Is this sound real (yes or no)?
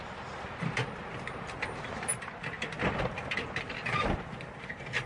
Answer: yes